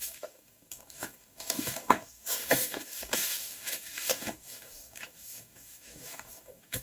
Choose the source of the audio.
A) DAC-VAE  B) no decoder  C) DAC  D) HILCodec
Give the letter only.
C